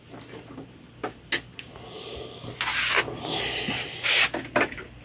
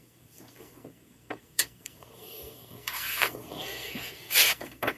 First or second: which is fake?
second